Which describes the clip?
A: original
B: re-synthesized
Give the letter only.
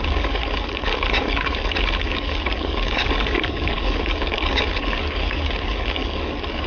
B